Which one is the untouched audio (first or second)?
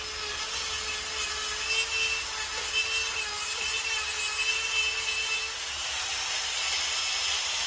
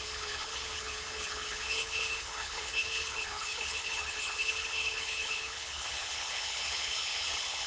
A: first